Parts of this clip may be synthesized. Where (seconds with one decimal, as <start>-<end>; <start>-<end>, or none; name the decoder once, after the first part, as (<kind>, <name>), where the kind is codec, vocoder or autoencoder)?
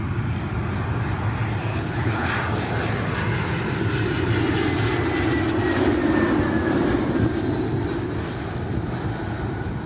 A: 1.7-2.3 (codec, HILCodec)